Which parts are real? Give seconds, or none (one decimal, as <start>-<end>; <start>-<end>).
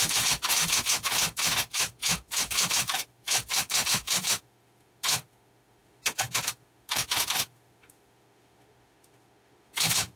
none